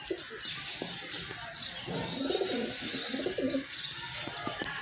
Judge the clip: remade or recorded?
recorded